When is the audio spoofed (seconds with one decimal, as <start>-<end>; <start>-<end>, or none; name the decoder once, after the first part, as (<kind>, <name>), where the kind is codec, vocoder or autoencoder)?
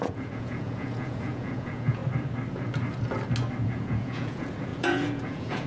0.0-2.0 (vocoder, Vocos); 3.6-5.7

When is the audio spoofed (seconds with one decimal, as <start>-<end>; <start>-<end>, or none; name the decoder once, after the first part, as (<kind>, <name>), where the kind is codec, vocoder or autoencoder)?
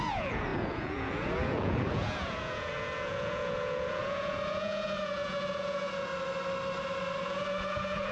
0.0-6.1 (vocoder, Vocos); 7.2-8.1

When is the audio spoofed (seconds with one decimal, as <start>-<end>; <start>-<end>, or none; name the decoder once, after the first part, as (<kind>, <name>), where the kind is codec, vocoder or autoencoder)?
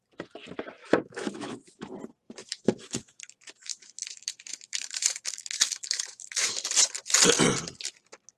0.8-1.9 (autoencoder, DAC-VAE); 2.4-6.5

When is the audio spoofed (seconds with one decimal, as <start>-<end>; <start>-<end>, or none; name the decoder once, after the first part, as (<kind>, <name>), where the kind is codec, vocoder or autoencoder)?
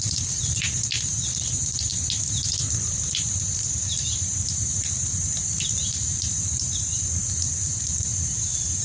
0.0-1.9 (vocoder, BigVGAN v2); 2.9-8.8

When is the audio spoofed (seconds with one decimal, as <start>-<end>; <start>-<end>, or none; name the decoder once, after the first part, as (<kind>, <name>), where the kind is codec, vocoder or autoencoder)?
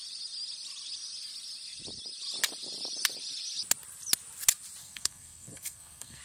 4.8-6.2 (codec, SNAC)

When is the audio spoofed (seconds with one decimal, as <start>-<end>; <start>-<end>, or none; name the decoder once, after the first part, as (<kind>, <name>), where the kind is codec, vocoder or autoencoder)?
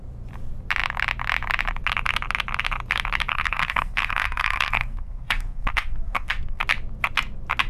3.3-6.6 (codec, SNAC)